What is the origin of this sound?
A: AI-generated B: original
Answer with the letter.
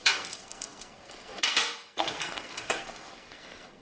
A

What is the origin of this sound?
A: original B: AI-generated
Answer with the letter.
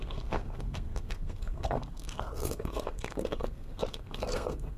B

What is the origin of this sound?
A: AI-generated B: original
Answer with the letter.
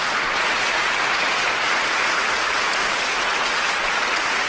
A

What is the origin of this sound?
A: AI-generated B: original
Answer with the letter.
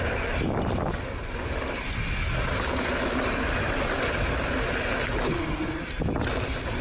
B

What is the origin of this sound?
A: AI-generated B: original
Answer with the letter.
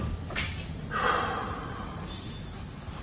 B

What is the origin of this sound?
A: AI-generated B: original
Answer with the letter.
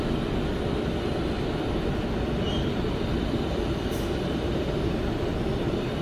A